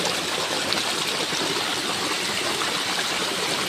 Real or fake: real